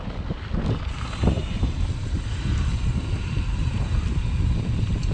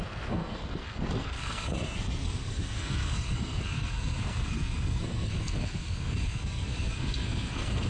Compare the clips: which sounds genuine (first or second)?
first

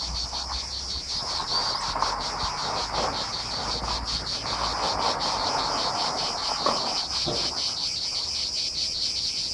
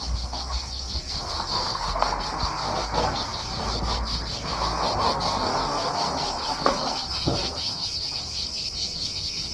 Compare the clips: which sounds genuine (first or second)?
first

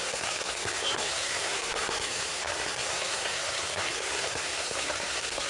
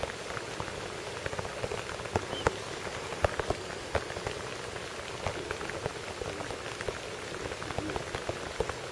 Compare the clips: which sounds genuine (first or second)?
second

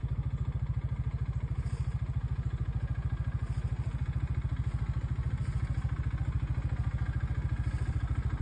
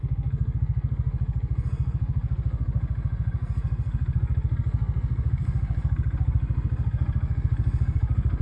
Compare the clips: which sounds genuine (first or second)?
first